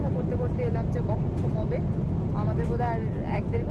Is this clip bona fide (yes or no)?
yes